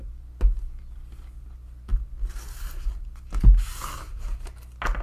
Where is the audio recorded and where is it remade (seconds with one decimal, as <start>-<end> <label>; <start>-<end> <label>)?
0.0-5.0 recorded